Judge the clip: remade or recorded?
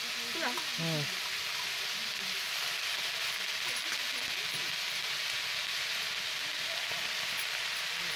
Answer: recorded